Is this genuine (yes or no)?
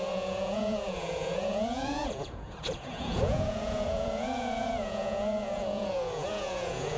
no